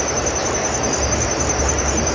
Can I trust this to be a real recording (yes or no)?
no